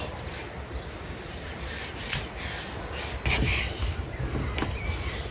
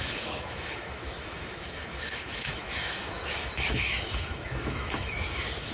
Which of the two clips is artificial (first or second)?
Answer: second